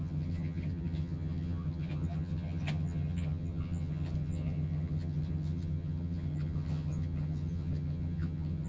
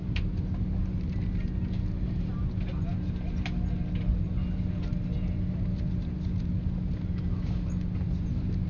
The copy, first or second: first